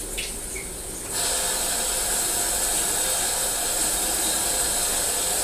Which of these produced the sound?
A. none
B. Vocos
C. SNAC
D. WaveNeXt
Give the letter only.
A